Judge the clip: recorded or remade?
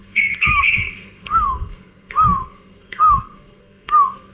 remade